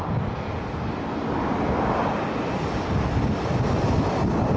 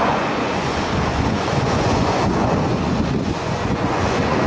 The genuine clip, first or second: first